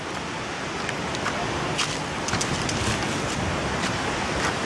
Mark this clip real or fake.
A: real